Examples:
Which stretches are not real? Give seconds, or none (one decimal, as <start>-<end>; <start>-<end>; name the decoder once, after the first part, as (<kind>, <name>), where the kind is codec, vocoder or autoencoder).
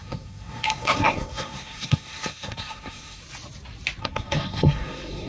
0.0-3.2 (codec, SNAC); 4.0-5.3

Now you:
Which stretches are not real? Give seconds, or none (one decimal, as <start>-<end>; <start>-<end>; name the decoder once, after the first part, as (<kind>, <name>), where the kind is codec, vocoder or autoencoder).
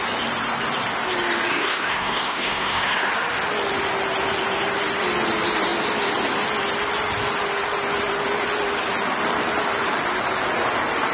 1.5-3.1 (codec, SNAC)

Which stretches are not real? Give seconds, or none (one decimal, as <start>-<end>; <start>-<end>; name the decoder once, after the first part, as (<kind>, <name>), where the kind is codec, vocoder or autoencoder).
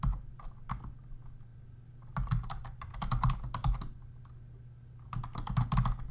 none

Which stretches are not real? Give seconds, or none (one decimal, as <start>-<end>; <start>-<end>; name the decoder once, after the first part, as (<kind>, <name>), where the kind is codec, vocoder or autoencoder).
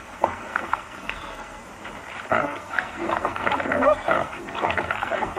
0.0-1.6 (codec, SNAC); 2.3-5.4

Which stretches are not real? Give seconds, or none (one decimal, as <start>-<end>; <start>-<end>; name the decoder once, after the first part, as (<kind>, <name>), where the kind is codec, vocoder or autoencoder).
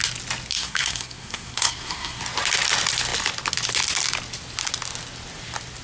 0.5-2.2 (codec, SNAC)